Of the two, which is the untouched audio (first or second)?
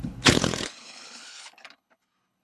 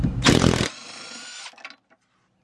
second